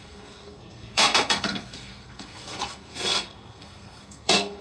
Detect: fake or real fake